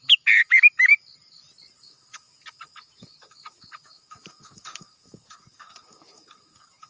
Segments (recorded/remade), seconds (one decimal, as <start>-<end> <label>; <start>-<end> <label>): 0.0-0.9 remade; 0.9-1.8 recorded; 1.8-6.9 remade